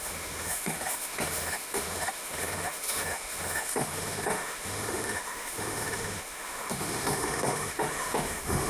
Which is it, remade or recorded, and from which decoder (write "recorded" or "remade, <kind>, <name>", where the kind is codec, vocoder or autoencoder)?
remade, autoencoder, DAC-VAE